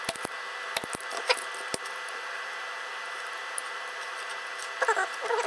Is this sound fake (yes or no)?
no